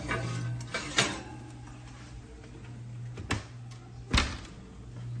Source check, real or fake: real